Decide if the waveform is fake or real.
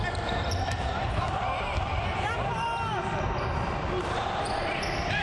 fake